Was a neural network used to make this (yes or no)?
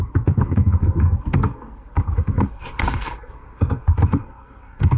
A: yes